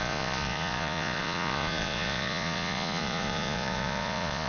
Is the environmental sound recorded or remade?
remade